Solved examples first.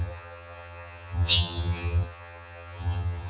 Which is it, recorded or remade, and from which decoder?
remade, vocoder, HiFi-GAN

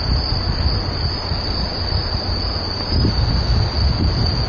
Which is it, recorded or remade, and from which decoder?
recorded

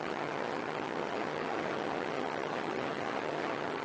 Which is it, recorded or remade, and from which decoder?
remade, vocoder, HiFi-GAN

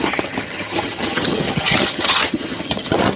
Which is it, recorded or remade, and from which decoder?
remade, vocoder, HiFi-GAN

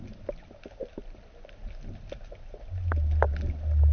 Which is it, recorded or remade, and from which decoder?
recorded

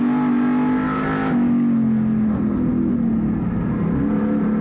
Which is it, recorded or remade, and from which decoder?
recorded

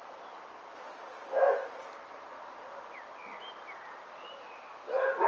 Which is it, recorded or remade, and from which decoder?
recorded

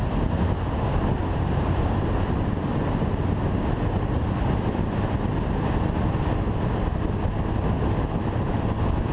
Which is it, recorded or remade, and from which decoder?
recorded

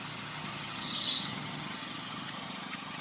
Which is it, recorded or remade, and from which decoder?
remade, vocoder, HiFi-GAN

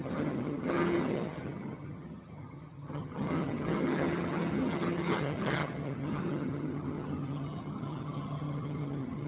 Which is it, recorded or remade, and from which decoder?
remade, vocoder, HiFi-GAN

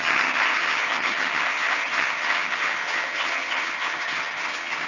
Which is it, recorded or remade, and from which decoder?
remade, vocoder, HiFi-GAN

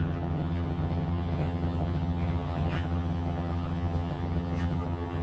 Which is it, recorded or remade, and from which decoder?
remade, vocoder, HiFi-GAN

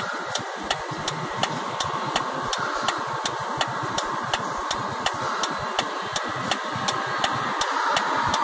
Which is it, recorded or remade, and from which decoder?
recorded